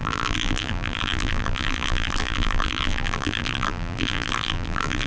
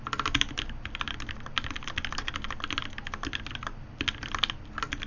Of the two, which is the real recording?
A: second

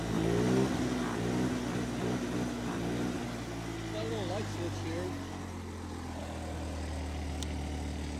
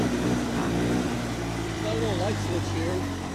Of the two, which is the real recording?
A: first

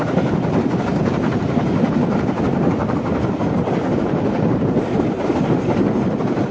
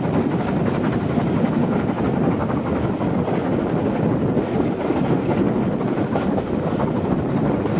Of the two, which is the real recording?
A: second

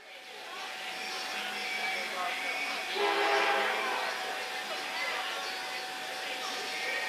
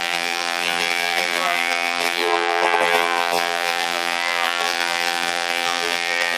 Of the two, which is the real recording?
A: first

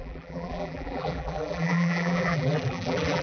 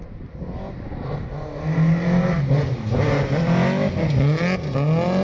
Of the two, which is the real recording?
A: second